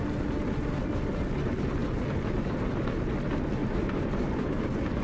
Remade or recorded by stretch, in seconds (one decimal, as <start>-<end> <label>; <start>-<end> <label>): 0.0-3.6 recorded; 3.6-4.6 remade; 4.6-5.0 recorded

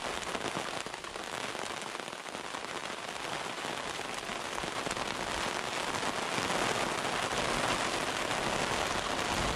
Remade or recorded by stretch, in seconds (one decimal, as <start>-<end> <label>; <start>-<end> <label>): 0.0-2.8 recorded; 2.8-4.9 remade; 4.9-9.6 recorded